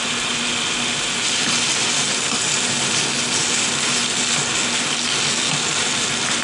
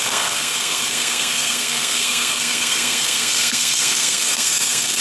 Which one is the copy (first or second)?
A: second